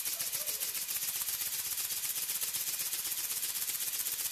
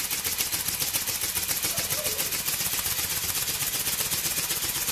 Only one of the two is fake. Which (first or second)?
first